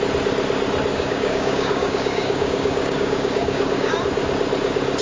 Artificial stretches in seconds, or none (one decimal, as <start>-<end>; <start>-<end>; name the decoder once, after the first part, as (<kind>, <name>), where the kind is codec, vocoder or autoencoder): 0.9-3.9 (codec, DAC)